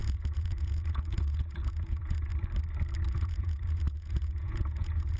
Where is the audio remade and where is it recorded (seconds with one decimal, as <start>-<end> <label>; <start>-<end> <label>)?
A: 0.0-2.3 remade; 2.3-3.1 recorded; 3.1-5.2 remade